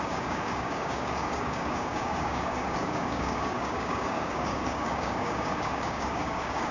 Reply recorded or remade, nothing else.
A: remade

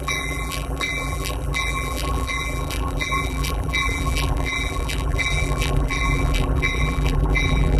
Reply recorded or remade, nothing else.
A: remade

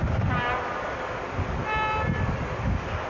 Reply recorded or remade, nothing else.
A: recorded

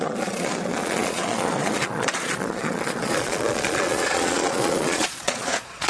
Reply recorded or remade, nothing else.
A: remade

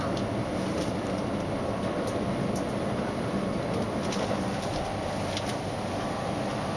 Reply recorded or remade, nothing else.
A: recorded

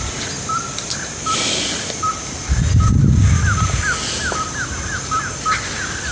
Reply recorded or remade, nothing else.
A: recorded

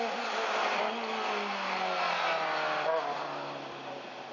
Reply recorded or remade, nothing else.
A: recorded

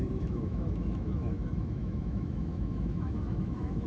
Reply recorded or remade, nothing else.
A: remade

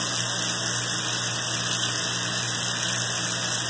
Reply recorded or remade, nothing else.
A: recorded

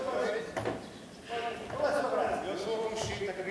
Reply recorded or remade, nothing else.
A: recorded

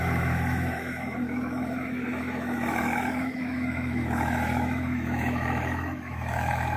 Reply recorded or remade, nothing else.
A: remade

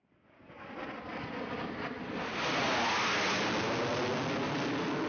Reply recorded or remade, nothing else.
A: recorded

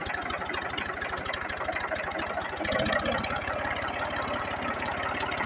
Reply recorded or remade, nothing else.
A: recorded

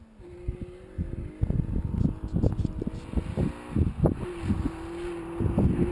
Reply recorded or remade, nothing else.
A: recorded